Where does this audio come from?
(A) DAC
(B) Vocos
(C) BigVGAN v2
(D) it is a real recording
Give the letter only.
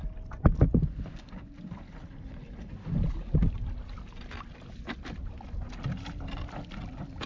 D